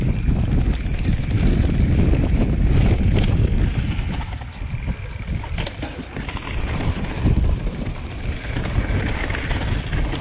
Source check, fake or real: real